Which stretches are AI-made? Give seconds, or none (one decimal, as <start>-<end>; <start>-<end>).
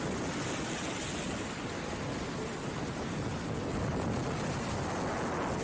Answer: none